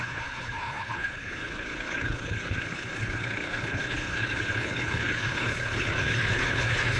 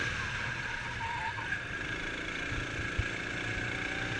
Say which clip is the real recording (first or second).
second